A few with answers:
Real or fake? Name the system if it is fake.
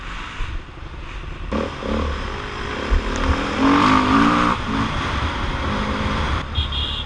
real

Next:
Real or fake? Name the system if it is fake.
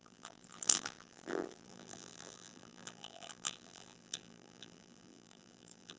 fake, vocoder, BigVGAN v2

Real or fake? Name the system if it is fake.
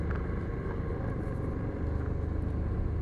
real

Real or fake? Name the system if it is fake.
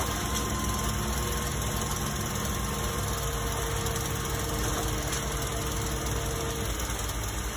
real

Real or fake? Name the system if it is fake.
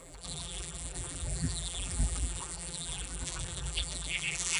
fake, vocoder, BigVGAN v2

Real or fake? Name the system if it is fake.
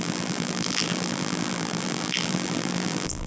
fake, vocoder, BigVGAN v2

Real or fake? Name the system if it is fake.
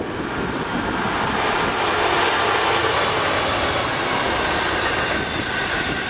fake, vocoder, BigVGAN v2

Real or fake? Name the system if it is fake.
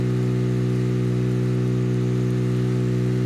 real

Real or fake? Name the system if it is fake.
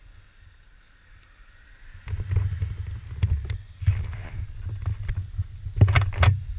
real